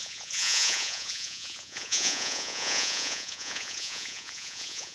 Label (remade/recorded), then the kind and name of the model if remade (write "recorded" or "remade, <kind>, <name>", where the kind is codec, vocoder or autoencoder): remade, vocoder, Vocos